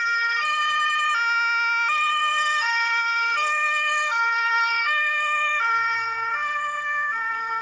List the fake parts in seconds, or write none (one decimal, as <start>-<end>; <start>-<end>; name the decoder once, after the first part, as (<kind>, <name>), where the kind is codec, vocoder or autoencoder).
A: 0.0-0.6 (codec, SNAC); 1.9-7.6